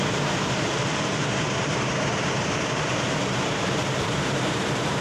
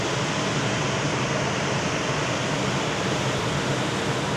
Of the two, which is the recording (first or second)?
second